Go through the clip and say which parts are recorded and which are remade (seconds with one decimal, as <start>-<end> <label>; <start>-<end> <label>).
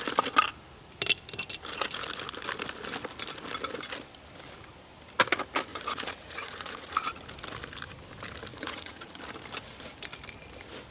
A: 0.0-5.7 recorded; 5.7-7.0 remade; 7.0-8.5 recorded; 8.5-9.2 remade; 9.2-10.9 recorded